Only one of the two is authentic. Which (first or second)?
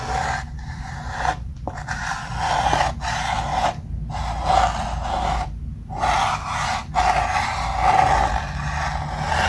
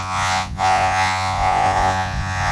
first